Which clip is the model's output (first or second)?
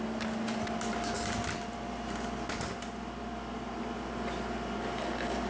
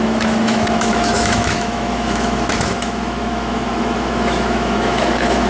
second